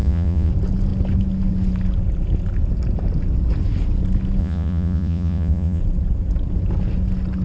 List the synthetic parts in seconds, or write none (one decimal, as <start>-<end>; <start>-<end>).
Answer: 0.0-0.5; 4.4-5.8